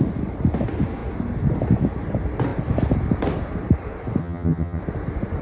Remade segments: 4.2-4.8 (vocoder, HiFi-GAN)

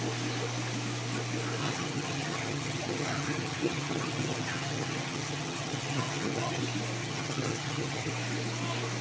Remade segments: 1.6-6.6 (vocoder, HiFi-GAN); 7.0-8.1

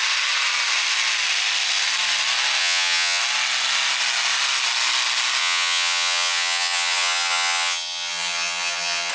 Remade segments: 2.6-3.2 (vocoder, HiFi-GAN); 5.4-9.1